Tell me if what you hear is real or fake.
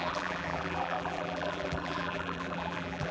fake